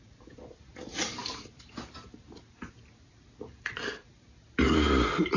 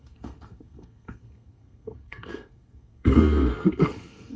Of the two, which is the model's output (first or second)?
second